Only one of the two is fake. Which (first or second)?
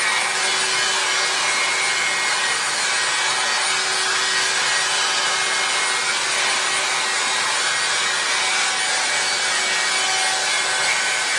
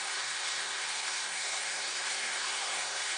second